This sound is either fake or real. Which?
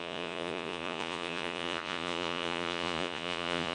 fake